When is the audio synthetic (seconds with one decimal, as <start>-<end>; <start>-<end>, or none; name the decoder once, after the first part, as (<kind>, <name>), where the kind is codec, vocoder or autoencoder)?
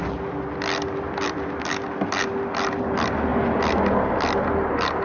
none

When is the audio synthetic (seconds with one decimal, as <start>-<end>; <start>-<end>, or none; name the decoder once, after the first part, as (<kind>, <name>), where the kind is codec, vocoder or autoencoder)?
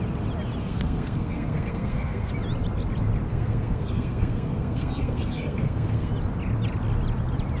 0.6-2.3 (codec, SNAC); 3.3-6.1